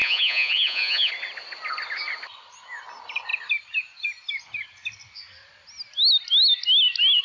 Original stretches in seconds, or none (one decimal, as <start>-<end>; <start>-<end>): 1.1-7.2